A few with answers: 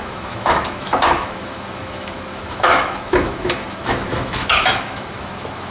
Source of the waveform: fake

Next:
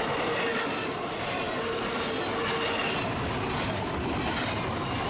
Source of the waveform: real